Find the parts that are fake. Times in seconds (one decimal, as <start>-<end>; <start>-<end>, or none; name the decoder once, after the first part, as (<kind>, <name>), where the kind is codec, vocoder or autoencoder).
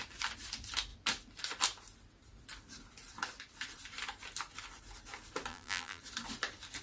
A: 5.5-6.0 (vocoder, BigVGAN v2)